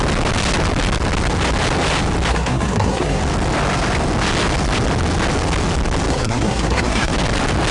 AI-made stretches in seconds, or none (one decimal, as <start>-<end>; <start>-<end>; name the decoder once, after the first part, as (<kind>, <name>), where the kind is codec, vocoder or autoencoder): 2.3-3.2 (codec, SNAC); 6.1-7.1